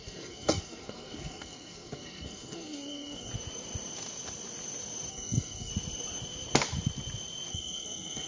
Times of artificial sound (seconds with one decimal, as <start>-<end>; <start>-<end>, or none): 0.0-3.3; 5.1-5.7; 7.5-8.3